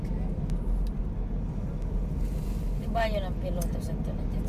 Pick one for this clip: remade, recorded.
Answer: recorded